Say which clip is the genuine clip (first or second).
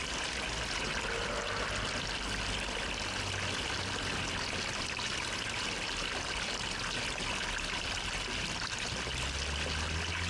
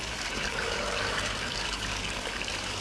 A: first